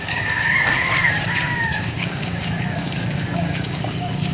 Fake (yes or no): yes